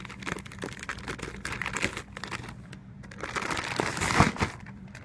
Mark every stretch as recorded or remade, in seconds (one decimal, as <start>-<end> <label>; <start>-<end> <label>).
0.0-5.0 recorded